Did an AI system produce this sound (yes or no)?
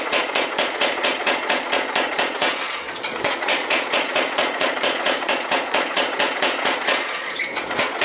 yes